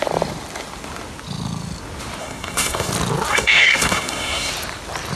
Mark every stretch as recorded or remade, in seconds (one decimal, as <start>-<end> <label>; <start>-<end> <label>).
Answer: 0.0-2.2 recorded; 2.2-2.9 remade; 2.9-3.3 recorded; 3.3-4.5 remade; 4.5-5.2 recorded

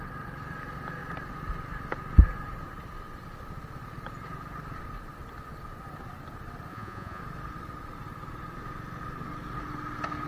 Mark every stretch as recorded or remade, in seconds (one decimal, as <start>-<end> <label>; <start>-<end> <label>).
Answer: 0.0-6.7 recorded; 6.7-7.2 remade; 7.2-10.3 recorded

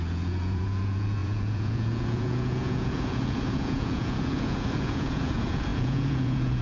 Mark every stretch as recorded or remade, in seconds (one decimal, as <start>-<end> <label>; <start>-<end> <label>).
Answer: 0.0-6.6 remade